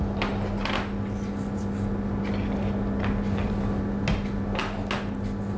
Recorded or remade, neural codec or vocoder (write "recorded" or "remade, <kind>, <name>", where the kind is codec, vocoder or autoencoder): recorded